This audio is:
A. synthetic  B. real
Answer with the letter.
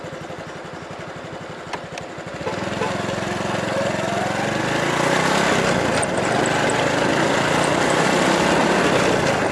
B